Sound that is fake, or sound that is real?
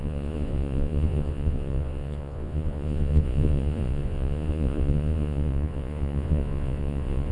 fake